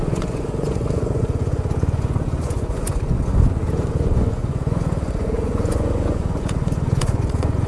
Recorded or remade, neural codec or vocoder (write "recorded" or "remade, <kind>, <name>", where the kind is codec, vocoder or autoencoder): remade, vocoder, Vocos